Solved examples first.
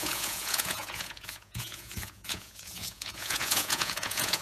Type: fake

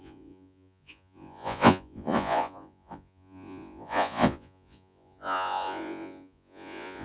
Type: fake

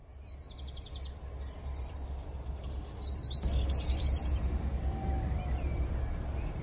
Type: real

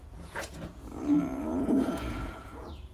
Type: fake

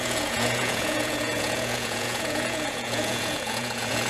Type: fake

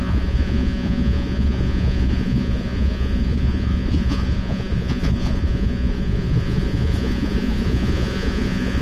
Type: fake